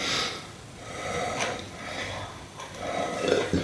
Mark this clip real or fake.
real